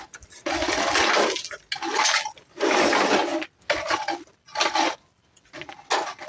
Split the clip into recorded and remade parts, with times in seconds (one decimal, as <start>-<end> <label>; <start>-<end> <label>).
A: 0.0-6.3 recorded